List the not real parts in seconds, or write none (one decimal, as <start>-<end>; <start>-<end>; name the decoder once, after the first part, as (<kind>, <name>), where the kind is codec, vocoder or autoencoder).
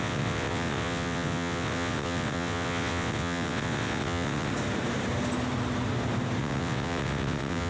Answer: 0.0-4.5 (vocoder, WaveNeXt); 6.4-7.7